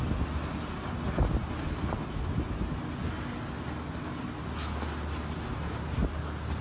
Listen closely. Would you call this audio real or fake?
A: real